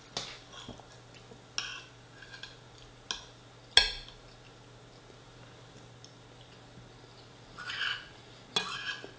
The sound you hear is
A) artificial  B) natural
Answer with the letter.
B